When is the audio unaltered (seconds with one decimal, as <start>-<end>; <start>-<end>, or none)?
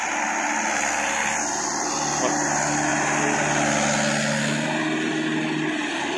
0.0-6.2